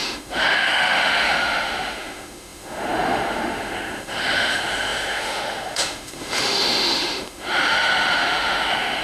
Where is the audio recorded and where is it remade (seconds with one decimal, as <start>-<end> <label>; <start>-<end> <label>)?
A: 0.0-9.0 remade